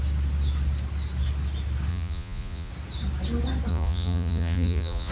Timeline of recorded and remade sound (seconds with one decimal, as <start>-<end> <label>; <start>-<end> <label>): 0.0-1.9 recorded; 1.9-2.7 remade; 2.7-3.7 recorded; 3.7-5.1 remade